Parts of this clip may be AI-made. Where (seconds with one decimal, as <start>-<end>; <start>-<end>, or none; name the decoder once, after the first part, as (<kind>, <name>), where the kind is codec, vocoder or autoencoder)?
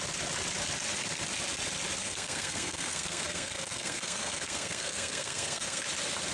2.0-5.8 (codec, SNAC)